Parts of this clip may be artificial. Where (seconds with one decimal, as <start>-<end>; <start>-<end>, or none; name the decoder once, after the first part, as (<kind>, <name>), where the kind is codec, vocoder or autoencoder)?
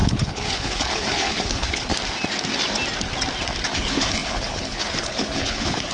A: 0.0-1.9 (codec, HILCodec); 3.8-5.9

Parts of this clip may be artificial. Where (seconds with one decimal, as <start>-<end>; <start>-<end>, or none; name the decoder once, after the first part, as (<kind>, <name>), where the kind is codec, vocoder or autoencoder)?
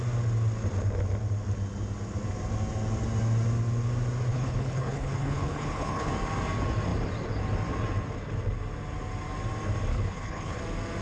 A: 4.3-6.1 (codec, HILCodec); 9.9-10.6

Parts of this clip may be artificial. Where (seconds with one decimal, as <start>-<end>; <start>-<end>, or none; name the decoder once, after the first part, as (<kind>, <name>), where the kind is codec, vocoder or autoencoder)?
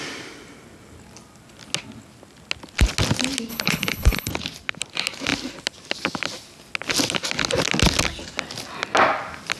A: 3.5-4.3 (codec, HILCodec)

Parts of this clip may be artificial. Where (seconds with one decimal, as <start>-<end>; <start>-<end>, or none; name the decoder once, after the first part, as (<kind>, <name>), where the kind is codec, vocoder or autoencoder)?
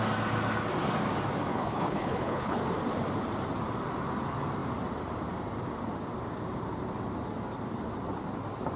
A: 1.5-2.6 (codec, HILCodec)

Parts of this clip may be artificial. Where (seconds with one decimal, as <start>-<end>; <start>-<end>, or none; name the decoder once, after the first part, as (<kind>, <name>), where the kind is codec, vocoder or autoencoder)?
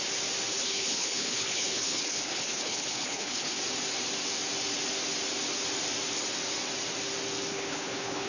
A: 0.5-3.6 (codec, HILCodec); 7.5-8.3